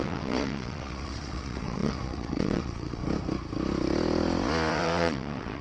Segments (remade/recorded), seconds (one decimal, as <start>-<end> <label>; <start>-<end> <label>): 0.0-3.0 remade; 3.0-4.7 recorded; 4.7-5.6 remade

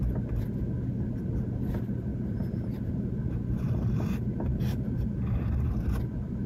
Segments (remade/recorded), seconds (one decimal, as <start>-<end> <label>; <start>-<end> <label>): 0.0-2.1 recorded; 2.1-2.9 remade; 2.9-4.5 recorded; 4.5-5.7 remade; 5.7-6.5 recorded

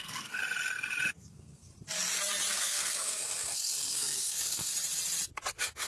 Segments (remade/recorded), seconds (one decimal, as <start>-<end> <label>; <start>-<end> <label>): 0.0-0.4 remade; 0.4-1.1 recorded; 1.1-1.7 remade; 1.7-2.5 recorded; 2.5-4.7 remade; 4.7-5.5 recorded; 5.5-5.9 remade

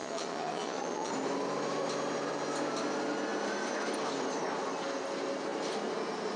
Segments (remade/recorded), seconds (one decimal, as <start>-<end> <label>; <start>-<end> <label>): 0.0-1.1 remade; 1.1-6.4 recorded